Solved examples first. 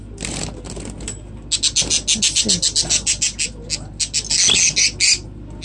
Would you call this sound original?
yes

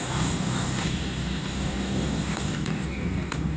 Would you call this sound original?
no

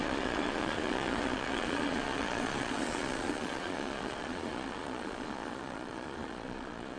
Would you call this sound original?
no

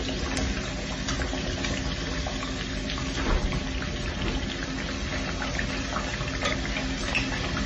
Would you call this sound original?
yes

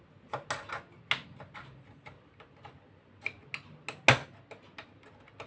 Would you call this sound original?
yes